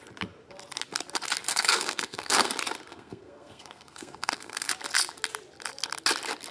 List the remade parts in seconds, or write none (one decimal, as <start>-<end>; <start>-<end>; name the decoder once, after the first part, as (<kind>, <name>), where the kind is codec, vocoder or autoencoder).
1.5-2.5 (codec, SNAC); 2.9-4.7